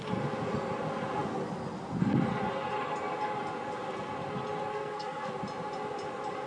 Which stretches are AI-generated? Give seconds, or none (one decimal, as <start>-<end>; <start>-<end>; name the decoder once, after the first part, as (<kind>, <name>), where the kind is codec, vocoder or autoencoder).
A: 4.7-5.3 (codec, SNAC)